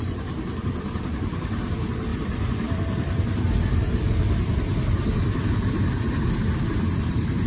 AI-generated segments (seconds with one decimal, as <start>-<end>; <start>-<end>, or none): 0.0-7.5